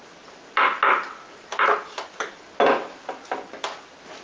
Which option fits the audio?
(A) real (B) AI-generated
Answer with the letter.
A